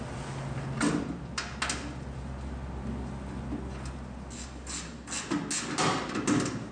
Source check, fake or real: real